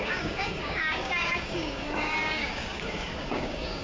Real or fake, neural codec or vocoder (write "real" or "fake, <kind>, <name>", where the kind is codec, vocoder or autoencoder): fake, codec, DAC